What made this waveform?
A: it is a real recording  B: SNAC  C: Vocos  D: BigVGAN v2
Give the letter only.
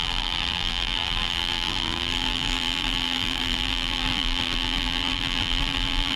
D